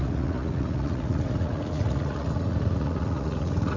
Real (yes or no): no